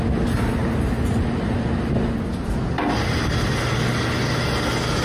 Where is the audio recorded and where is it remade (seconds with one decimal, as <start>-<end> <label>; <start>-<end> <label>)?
0.0-0.6 recorded; 0.6-1.8 remade; 1.8-2.3 recorded; 2.3-3.3 remade; 3.3-5.0 recorded